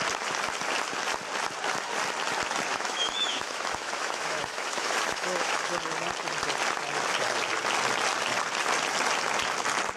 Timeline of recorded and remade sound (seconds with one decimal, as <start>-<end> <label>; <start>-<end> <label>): 0.0-2.7 recorded; 2.7-5.7 remade; 5.7-10.0 recorded